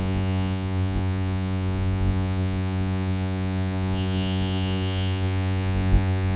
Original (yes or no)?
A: no